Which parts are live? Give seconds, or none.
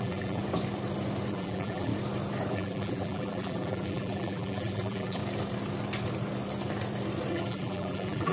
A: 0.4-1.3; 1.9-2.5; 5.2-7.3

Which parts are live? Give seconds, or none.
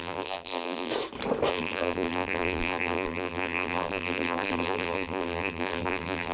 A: 0.9-1.5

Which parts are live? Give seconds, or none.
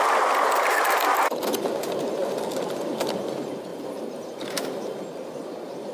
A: 0.0-3.7; 5.0-5.9